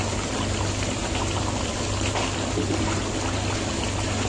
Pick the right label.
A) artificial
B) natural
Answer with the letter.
B